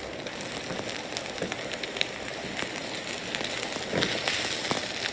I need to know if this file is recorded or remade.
recorded